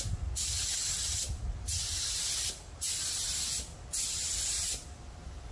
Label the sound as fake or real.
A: real